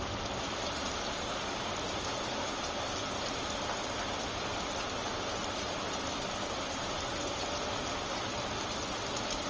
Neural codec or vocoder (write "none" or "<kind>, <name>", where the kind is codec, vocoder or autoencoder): none